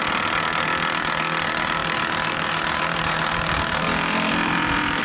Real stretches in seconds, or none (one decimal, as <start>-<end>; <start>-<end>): 0.0-1.8